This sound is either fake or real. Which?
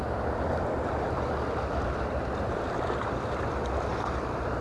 fake